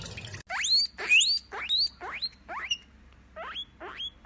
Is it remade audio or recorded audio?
recorded